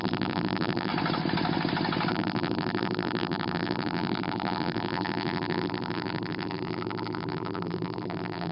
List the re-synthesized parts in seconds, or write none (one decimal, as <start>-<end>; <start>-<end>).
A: 0.0-0.9; 2.1-8.5